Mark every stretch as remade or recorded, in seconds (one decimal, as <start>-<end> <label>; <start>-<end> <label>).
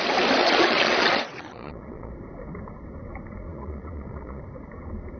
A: 0.0-0.4 recorded; 0.4-2.1 remade; 2.1-3.5 recorded; 3.5-4.4 remade; 4.4-5.2 recorded